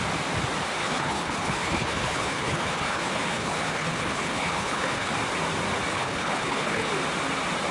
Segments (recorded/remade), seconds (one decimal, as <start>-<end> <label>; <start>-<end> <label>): 0.0-0.8 recorded; 0.8-5.1 remade; 5.1-5.9 recorded; 5.9-6.9 remade; 6.9-7.7 recorded